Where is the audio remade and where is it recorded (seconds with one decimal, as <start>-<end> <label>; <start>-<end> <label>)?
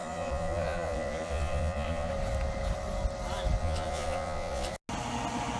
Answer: 0.0-2.1 remade; 2.1-3.6 recorded; 3.6-4.7 remade; 4.7-5.6 recorded